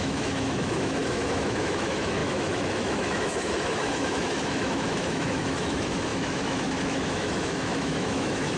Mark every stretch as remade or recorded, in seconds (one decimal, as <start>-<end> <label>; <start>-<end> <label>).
0.0-8.6 remade